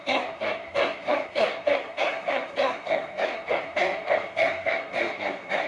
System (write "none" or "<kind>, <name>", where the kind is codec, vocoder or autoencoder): codec, SNAC